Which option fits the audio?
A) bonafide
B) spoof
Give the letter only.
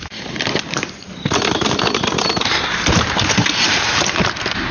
B